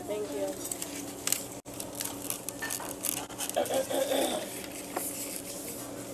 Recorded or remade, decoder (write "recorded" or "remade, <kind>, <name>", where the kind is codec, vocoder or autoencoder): recorded